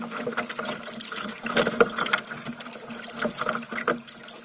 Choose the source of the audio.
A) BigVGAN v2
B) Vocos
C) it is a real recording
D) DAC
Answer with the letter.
C